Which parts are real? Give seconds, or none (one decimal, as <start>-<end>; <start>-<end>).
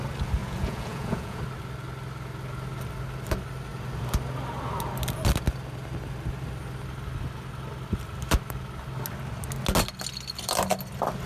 0.0-0.4; 1.4-11.3